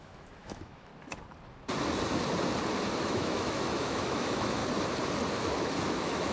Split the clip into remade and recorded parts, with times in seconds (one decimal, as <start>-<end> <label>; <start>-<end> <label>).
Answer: 0.0-0.9 remade; 0.9-3.0 recorded; 3.0-4.6 remade; 4.6-5.3 recorded; 5.3-6.3 remade